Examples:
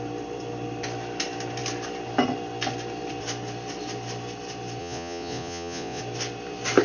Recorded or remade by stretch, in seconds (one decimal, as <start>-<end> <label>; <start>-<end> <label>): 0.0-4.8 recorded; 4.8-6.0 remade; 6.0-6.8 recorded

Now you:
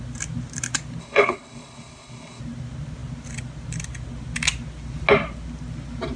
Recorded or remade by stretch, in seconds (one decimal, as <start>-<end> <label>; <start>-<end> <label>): 0.0-1.0 recorded; 1.0-2.4 remade; 2.4-6.2 recorded

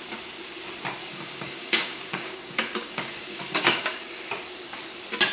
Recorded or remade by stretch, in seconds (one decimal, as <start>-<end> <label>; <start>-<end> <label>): 0.0-1.0 recorded; 1.0-4.2 remade; 4.2-5.3 recorded

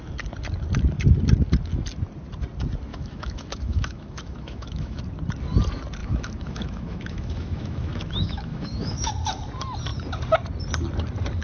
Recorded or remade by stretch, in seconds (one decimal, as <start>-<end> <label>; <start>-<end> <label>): 0.0-2.9 recorded; 2.9-5.0 remade; 5.0-6.0 recorded; 6.0-9.1 remade; 9.1-11.4 recorded